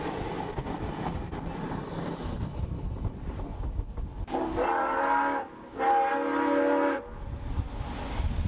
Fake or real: real